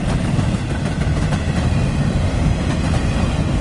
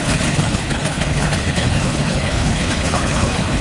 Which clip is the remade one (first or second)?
second